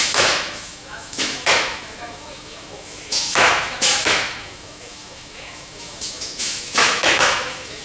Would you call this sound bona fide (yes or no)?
no